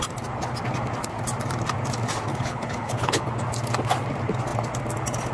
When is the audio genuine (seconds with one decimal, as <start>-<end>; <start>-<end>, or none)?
0.0-2.3; 3.3-5.3